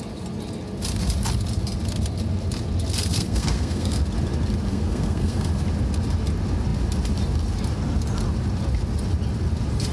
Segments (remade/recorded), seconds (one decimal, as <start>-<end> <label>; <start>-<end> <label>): 0.0-3.1 recorded; 3.1-4.0 remade; 4.0-4.7 recorded; 4.7-5.5 remade; 5.5-9.9 recorded

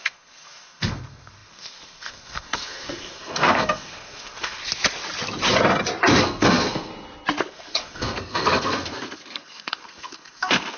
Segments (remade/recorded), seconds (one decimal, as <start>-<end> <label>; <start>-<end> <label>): 0.0-4.6 remade; 4.6-6.2 recorded; 6.2-6.9 remade; 6.9-7.5 recorded; 7.5-10.8 remade

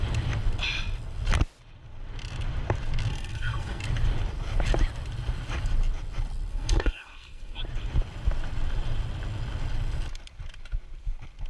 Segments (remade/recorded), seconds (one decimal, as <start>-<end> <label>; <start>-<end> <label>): 0.0-3.1 recorded; 3.1-3.8 remade; 3.8-6.5 recorded; 6.5-7.6 remade; 7.6-11.5 recorded

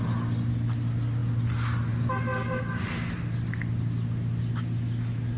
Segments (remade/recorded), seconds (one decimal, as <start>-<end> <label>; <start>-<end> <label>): 0.0-5.4 recorded

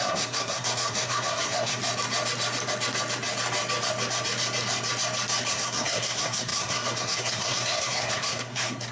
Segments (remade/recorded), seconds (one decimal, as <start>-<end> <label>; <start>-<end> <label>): 0.0-1.8 remade; 1.8-5.5 recorded; 5.5-8.9 remade

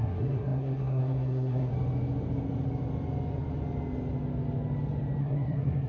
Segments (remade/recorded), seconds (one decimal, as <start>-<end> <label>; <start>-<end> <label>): 0.0-1.7 remade; 1.7-5.2 recorded; 5.2-5.9 remade

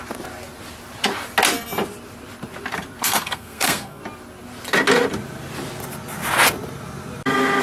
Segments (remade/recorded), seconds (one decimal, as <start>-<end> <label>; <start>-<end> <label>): 0.0-3.0 recorded; 3.0-4.0 remade; 4.0-7.6 recorded

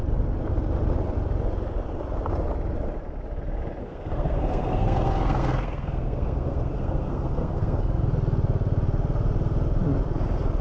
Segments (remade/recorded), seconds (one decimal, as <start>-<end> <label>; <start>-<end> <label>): 0.0-3.8 recorded; 3.8-8.1 remade; 8.1-10.6 recorded